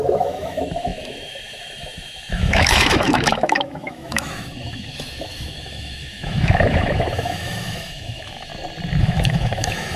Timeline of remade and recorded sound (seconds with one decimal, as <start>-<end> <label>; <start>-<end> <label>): 0.0-8.5 remade; 8.5-9.0 recorded; 9.0-10.0 remade